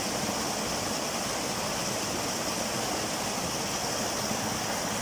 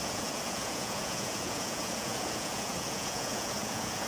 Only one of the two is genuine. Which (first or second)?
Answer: first